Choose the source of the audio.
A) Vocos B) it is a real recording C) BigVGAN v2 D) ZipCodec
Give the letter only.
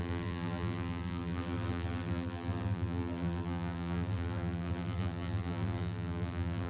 C